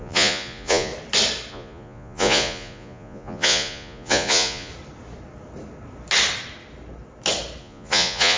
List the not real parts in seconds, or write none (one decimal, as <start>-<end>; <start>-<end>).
0.0-0.9; 1.5-4.7; 7.6-8.4